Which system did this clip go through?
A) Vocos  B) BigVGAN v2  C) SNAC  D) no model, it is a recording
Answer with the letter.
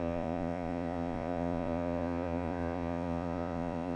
A